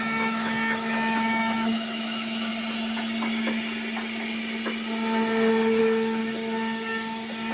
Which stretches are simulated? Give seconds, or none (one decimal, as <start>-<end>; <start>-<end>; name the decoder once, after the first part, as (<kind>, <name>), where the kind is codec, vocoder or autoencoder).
0.0-2.5 (autoencoder, DAC-VAE); 5.8-6.2